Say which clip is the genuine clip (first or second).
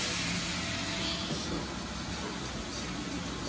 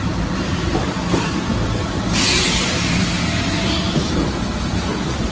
first